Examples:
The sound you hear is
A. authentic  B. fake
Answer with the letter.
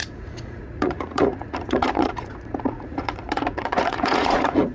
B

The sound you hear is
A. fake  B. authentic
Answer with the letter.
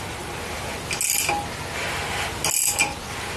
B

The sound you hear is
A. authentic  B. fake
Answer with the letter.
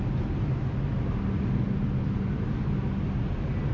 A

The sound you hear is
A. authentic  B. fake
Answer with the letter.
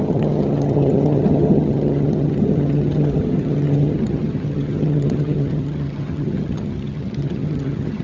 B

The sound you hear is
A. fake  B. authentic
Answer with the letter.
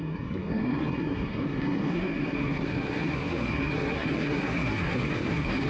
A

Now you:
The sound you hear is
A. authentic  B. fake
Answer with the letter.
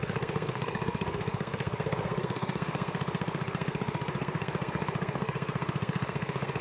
B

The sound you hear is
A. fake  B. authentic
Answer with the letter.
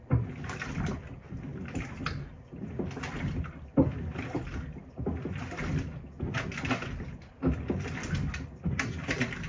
B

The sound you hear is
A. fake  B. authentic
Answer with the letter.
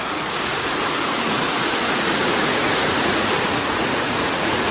A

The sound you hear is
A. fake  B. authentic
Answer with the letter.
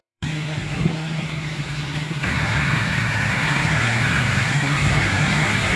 A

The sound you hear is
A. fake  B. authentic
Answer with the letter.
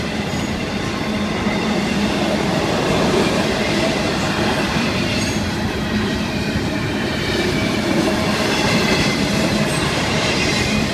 A